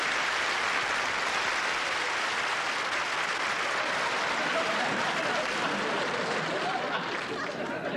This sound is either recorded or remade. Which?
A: recorded